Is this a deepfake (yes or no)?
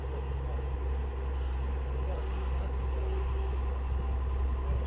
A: no